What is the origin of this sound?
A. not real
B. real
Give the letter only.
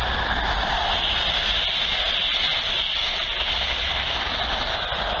B